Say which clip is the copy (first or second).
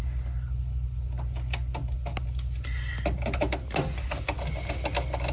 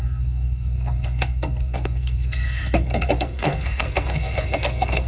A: second